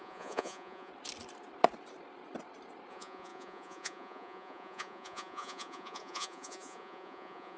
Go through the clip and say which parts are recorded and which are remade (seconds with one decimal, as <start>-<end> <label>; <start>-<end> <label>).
0.0-0.9 remade; 0.9-2.9 recorded; 2.9-7.6 remade